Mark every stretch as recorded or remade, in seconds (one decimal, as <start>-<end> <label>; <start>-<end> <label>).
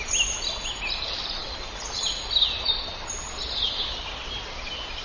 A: 0.0-5.0 recorded